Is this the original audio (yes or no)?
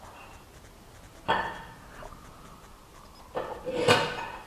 yes